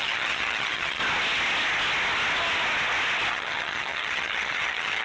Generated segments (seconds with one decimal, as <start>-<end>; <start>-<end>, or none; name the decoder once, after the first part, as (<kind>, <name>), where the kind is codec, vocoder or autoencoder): 0.0-1.0 (vocoder, HiFi-GAN); 3.3-5.0